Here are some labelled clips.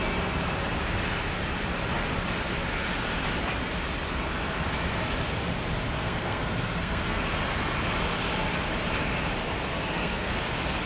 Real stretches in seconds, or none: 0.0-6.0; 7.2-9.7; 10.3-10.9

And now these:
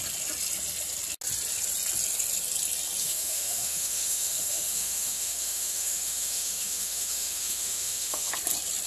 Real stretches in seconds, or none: 0.0-3.0; 8.3-8.9

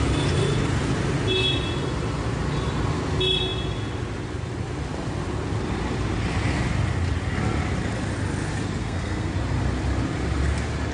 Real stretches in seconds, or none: 0.0-8.8; 9.3-10.9

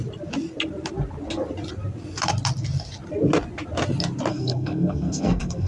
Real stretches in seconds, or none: 0.0-4.3